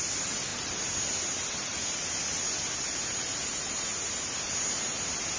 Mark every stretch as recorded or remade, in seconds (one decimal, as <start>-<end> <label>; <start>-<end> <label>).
0.0-5.4 recorded